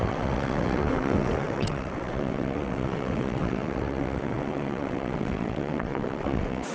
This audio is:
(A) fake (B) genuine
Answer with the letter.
A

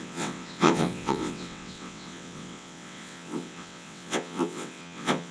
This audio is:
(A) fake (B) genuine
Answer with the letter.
A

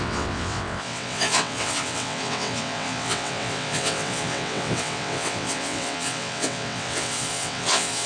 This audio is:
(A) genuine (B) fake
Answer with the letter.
B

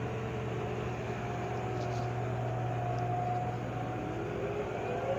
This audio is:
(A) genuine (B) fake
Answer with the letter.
A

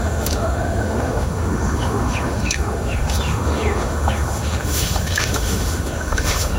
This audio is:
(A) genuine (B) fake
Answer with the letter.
B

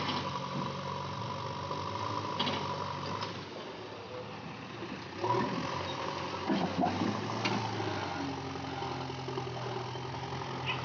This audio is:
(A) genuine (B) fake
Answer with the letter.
A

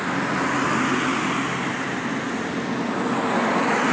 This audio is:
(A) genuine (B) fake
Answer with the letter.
A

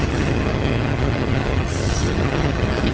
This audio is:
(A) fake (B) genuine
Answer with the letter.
A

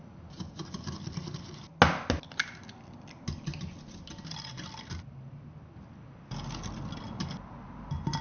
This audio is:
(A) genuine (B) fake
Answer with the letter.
A